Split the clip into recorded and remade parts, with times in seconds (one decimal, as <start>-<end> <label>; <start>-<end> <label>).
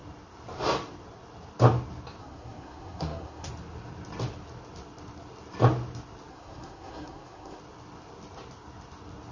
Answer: 0.0-2.2 recorded; 2.2-3.5 remade; 3.5-6.3 recorded; 6.3-7.6 remade; 7.6-9.3 recorded